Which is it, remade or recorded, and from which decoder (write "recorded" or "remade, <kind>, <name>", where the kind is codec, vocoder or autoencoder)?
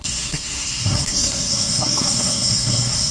remade, codec, SNAC